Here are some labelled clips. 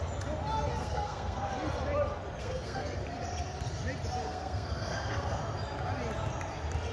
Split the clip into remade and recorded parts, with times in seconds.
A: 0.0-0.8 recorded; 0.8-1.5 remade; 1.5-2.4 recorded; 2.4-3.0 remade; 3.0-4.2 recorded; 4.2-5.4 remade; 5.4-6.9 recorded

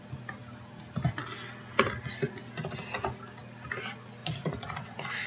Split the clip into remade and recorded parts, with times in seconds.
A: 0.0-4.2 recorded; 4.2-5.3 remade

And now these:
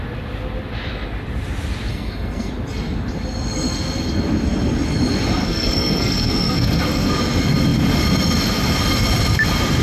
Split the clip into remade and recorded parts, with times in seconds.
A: 0.0-1.9 recorded; 1.9-2.5 remade; 2.5-5.4 recorded; 5.4-7.1 remade; 7.1-9.8 recorded

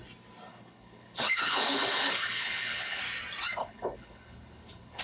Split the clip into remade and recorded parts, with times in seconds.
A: 0.0-0.5 recorded; 0.5-3.0 remade; 3.0-3.6 recorded; 3.6-5.0 remade

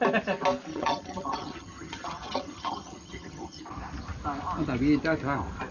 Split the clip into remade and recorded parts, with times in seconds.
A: 0.0-0.7 recorded; 0.7-3.6 remade; 3.6-5.7 recorded

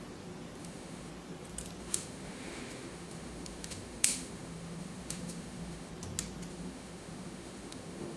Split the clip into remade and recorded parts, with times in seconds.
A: 0.0-0.6 recorded; 0.6-1.1 remade; 1.1-1.8 recorded; 1.8-5.9 remade; 5.9-6.5 recorded; 6.5-8.2 remade